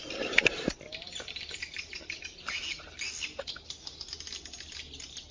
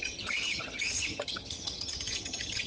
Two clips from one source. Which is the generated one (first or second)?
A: second